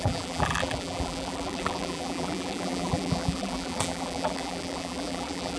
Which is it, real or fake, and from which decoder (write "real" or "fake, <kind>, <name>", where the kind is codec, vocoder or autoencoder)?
fake, vocoder, BigVGAN v2